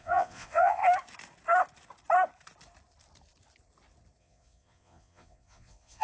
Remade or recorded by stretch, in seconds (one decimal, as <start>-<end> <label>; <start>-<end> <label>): 0.0-0.8 remade; 0.8-4.2 recorded; 4.2-6.0 remade